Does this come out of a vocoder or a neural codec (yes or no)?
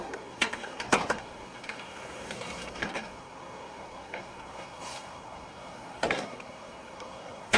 yes